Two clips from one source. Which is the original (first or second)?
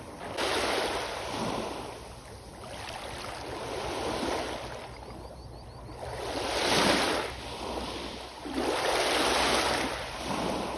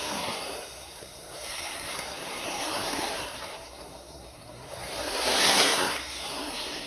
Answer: first